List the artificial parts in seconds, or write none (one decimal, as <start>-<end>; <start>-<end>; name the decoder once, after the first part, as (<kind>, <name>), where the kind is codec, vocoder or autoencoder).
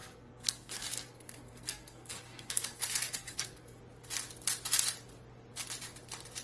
0.0-3.8 (codec, SNAC)